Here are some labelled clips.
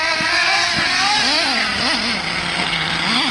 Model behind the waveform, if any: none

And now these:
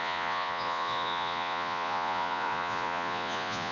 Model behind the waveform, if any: vocoder, Vocos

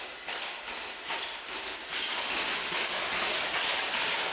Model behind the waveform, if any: none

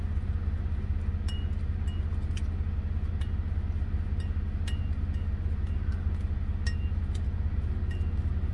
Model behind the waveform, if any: none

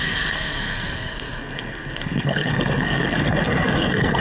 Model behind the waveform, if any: codec, SNAC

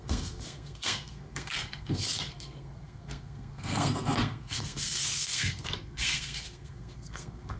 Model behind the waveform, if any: codec, SNAC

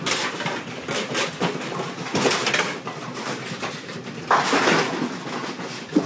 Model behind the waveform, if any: none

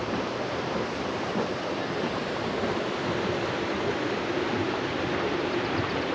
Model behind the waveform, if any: vocoder, BigVGAN v2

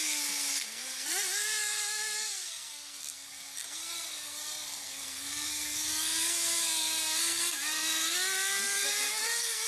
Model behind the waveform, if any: codec, SNAC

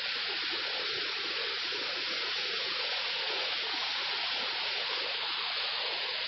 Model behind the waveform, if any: vocoder, Vocos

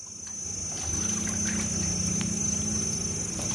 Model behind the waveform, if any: none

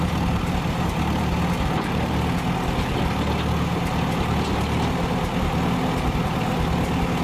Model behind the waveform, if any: none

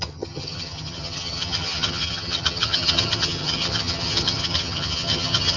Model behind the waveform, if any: vocoder, HiFi-GAN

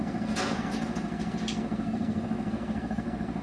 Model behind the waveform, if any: codec, SNAC